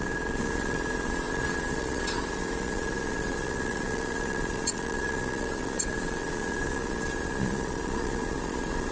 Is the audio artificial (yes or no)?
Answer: yes